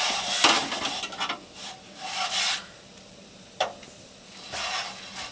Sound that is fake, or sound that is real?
real